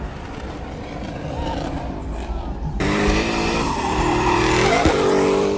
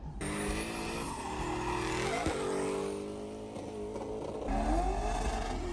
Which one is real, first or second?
second